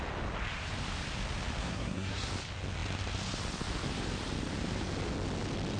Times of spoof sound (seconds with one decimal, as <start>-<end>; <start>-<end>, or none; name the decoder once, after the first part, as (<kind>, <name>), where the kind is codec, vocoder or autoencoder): 1.6-2.3 (codec, SNAC)